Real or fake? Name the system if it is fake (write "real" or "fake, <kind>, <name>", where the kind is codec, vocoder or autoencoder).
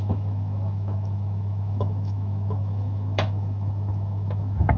fake, autoencoder, DAC-VAE